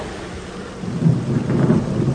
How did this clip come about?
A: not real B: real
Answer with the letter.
B